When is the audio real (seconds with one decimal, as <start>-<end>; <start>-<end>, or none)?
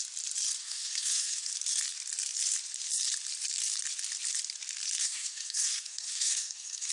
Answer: 0.0-0.6; 1.5-5.0